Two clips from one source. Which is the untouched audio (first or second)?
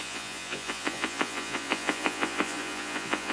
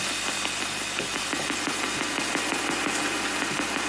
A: second